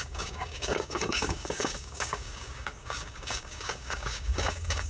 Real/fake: fake